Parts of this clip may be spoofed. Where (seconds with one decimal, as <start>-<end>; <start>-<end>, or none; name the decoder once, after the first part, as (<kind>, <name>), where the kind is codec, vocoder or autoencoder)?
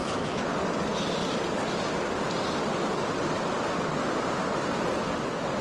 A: 0.0-0.5 (autoencoder, DAC-VAE)